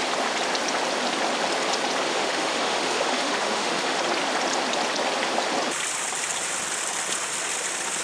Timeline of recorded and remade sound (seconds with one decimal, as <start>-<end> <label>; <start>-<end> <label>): 0.0-2.1 recorded; 2.1-4.0 remade; 4.0-8.0 recorded